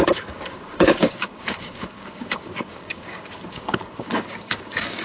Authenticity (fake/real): fake